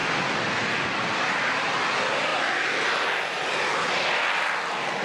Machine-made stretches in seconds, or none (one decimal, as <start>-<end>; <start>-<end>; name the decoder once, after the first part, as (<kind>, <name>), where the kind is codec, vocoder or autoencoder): none